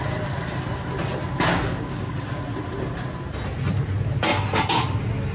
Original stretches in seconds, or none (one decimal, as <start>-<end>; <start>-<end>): 0.0-1.5; 2.1-5.3